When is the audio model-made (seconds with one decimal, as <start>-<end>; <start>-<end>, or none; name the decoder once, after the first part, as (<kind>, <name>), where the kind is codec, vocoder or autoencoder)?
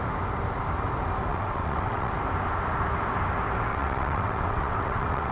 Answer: 1.3-2.1 (vocoder, WaveNeXt); 3.7-5.3